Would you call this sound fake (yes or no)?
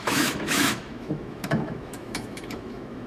yes